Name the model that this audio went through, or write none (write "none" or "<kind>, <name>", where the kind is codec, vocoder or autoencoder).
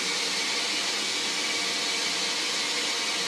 none